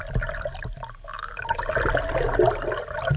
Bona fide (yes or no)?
yes